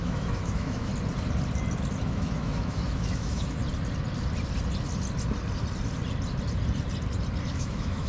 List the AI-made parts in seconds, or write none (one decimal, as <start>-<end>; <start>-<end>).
0.0-0.9; 2.0-3.6; 7.5-8.1